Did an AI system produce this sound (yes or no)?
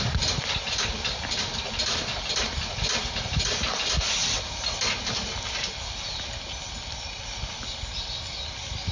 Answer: no